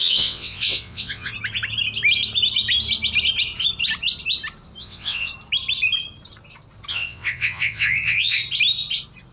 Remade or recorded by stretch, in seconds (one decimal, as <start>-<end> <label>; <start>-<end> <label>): 0.0-1.3 remade; 1.3-4.8 recorded; 4.8-5.3 remade; 5.3-6.9 recorded; 6.9-8.4 remade; 8.4-9.3 recorded